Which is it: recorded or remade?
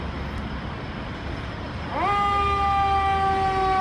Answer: recorded